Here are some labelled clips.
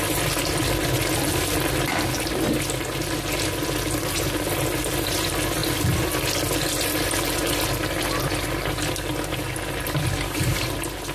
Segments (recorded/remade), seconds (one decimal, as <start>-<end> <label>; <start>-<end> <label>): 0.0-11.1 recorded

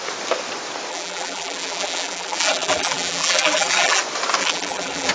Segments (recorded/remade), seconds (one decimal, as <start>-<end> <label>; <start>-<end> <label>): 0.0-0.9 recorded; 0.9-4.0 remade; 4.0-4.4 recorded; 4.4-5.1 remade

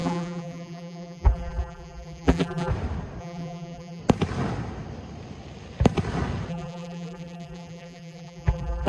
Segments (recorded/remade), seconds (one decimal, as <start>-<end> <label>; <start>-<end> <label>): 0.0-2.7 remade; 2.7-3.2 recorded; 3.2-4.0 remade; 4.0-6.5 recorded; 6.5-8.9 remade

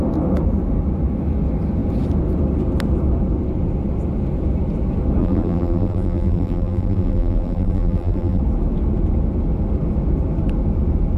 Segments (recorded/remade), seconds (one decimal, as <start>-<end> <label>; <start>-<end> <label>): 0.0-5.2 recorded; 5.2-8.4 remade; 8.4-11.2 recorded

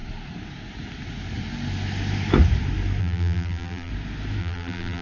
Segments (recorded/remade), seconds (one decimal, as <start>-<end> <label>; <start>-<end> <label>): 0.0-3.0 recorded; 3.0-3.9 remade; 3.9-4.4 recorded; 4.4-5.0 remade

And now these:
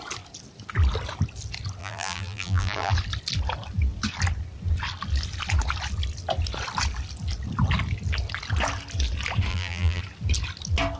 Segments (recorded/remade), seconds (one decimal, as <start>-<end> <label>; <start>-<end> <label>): 0.0-1.8 recorded; 1.8-2.9 remade; 2.9-9.5 recorded; 9.5-10.0 remade; 10.0-11.0 recorded